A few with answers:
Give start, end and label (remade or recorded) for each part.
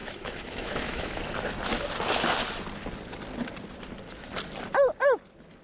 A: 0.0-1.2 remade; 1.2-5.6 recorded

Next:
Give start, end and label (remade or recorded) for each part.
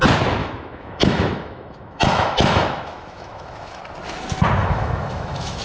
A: 0.0-0.4 recorded; 0.4-3.8 remade; 3.8-4.6 recorded; 4.6-5.6 remade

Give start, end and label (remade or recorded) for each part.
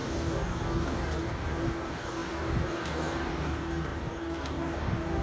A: 0.0-5.2 remade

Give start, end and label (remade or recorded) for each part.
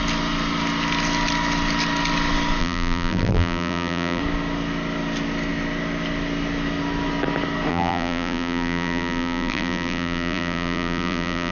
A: 0.0-2.6 recorded; 2.6-4.2 remade; 4.2-7.7 recorded; 7.7-11.5 remade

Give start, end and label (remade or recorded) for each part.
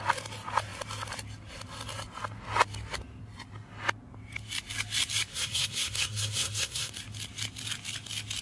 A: 0.0-5.3 recorded; 5.3-6.9 remade; 6.9-8.4 recorded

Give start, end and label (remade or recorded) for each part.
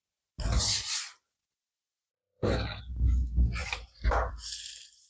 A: 0.0-2.1 recorded; 2.1-2.8 remade; 2.8-3.6 recorded; 3.6-4.3 remade; 4.3-5.1 recorded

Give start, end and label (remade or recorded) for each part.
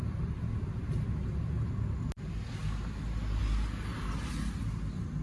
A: 0.0-5.2 recorded